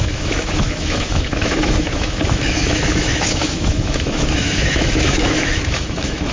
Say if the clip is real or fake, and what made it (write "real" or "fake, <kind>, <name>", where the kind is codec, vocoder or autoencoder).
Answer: fake, autoencoder, DAC-VAE